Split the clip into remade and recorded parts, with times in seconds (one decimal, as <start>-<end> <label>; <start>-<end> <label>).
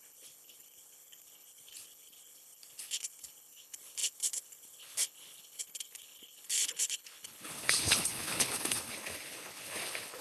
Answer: 0.0-10.2 remade